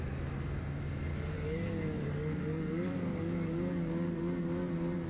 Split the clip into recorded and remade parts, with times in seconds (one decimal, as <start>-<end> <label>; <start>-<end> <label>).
0.0-1.1 recorded; 1.1-4.2 remade; 4.2-5.1 recorded